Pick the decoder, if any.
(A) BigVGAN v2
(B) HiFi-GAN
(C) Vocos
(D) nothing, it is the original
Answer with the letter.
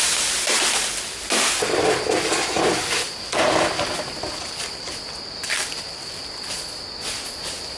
D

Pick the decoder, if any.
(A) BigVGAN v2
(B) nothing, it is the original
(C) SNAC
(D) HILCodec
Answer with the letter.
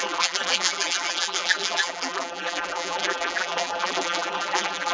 A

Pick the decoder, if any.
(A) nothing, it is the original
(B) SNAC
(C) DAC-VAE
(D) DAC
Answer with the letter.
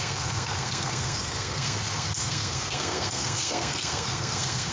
B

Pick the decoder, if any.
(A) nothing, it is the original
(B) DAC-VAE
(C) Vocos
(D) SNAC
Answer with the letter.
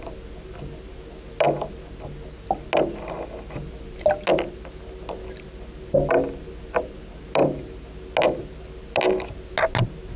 A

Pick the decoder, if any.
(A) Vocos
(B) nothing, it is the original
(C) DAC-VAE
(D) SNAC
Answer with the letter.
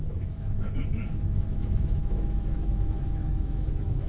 C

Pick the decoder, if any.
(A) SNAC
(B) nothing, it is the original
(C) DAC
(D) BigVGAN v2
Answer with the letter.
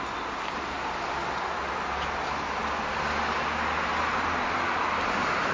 B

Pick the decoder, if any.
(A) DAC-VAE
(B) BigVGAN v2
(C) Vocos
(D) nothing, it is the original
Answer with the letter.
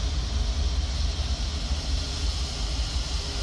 D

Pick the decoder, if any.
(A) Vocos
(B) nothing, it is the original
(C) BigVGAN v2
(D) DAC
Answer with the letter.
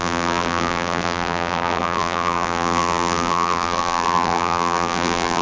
C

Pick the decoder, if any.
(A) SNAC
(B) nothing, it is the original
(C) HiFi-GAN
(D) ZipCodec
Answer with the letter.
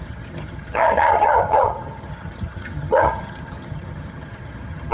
C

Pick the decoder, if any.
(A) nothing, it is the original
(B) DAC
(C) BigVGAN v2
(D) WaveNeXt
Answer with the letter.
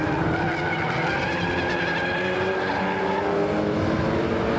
A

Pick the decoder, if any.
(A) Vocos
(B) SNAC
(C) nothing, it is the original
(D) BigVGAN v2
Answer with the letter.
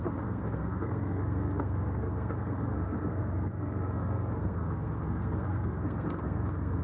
B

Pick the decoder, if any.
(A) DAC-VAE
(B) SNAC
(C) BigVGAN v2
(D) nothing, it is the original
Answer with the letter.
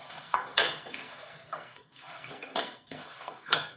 B